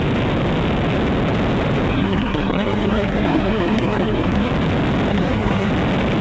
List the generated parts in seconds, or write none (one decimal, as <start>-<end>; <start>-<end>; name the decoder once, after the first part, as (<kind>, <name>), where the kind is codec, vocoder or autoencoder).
1.9-4.5 (codec, SNAC); 5.1-5.7